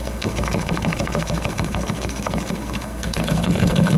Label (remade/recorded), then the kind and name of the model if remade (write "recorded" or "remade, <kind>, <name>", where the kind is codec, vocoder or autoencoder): remade, codec, SNAC